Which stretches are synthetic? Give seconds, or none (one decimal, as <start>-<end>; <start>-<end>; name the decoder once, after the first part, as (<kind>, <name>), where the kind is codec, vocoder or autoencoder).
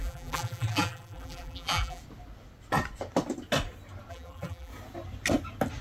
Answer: 0.0-2.0 (vocoder, BigVGAN v2); 4.1-4.7